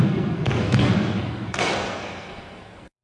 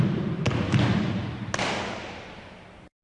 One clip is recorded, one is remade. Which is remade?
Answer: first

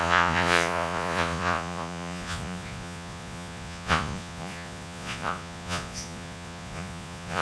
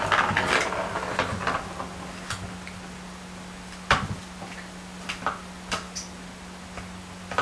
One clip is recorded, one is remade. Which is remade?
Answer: first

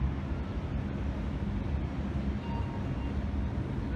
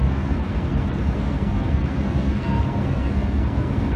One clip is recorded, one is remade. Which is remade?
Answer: second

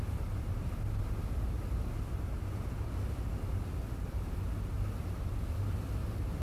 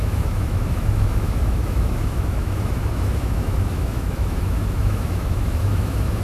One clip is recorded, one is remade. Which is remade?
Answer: second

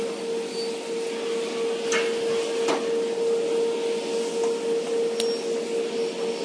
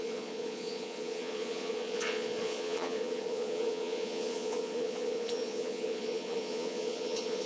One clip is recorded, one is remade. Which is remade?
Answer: second